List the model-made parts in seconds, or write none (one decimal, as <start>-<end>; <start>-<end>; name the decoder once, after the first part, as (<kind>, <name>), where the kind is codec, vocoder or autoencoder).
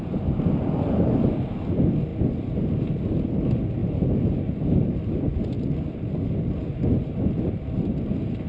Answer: none